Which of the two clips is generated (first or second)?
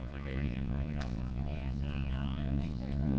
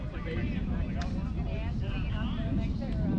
first